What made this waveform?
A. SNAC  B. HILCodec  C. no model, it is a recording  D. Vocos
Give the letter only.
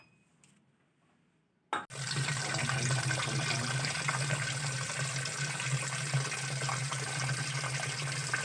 C